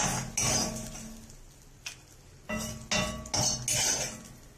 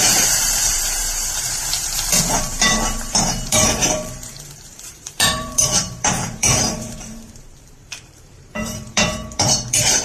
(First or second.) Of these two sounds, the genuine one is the first